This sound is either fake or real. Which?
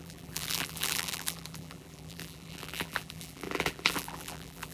fake